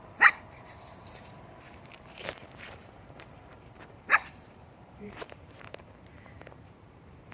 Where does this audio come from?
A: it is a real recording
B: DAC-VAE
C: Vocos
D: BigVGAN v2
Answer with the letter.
D